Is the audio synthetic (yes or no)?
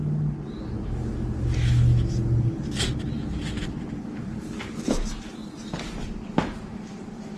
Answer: no